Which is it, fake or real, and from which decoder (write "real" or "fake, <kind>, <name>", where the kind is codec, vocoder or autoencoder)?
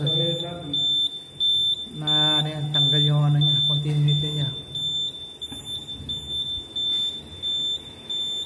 real